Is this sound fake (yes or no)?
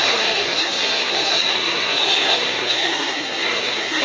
yes